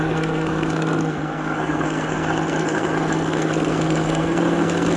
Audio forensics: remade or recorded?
remade